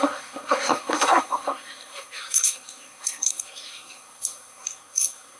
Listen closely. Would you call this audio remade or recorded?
remade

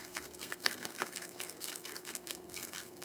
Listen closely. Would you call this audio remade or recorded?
remade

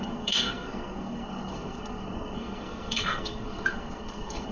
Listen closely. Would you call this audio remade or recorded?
remade